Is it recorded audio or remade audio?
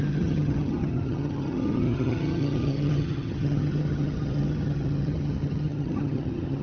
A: remade